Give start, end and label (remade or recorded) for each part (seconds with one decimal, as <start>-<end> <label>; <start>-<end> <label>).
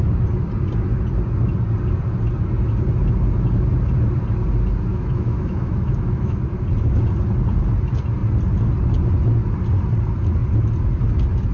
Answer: 0.0-4.9 recorded; 4.9-6.4 remade; 6.4-11.5 recorded